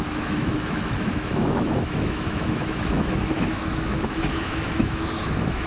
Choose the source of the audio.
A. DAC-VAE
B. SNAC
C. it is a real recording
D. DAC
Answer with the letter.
A